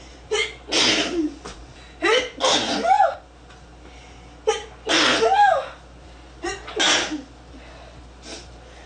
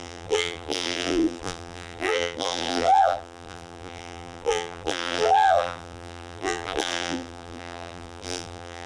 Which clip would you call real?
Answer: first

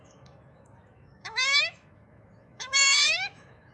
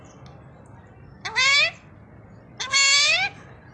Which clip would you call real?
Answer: second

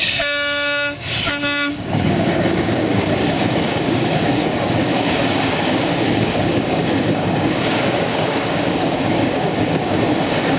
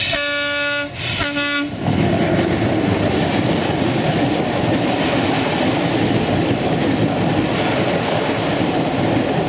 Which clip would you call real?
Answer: second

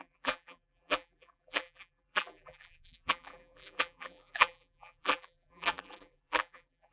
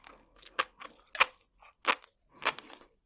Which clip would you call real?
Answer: second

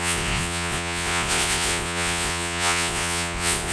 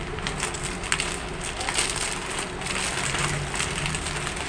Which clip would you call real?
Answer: second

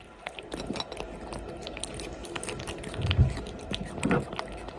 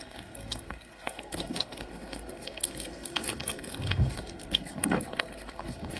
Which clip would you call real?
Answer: first